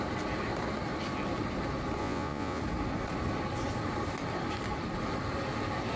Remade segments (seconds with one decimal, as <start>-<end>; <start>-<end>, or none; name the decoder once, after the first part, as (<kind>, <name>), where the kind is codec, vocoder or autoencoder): 2.0-2.6 (vocoder, Vocos)